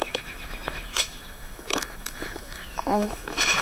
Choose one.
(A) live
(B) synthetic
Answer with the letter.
B